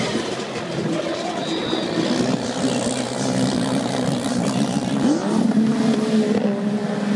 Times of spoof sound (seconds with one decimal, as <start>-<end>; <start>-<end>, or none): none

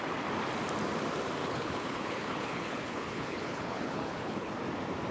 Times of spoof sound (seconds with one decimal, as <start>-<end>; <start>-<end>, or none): 1.4-4.5

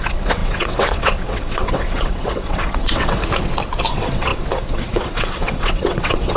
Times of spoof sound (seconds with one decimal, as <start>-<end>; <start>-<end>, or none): 0.0-3.2; 3.9-6.4

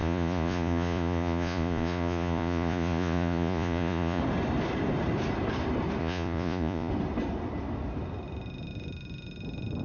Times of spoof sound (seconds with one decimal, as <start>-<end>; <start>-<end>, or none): 0.0-4.2; 6.0-6.9